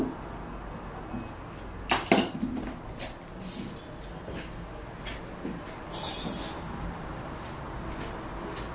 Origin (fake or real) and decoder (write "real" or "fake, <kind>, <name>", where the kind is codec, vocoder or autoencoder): real